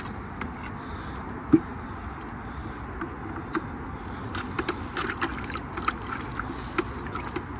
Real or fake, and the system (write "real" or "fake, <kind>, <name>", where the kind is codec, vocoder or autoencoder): real